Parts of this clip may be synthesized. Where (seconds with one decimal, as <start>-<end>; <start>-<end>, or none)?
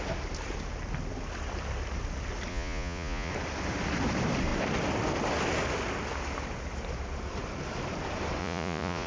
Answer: 2.5-3.3; 8.4-9.1